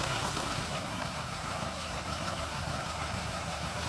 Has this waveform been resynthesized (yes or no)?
yes